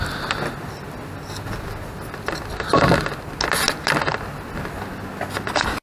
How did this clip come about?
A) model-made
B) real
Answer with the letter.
B